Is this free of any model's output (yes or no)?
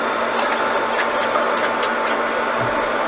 yes